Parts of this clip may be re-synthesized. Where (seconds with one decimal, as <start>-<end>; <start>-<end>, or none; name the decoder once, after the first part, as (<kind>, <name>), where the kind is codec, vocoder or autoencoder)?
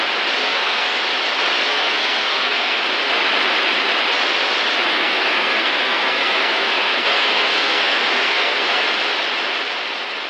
0.4-1.0 (codec, SNAC); 1.7-2.8; 4.9-8.8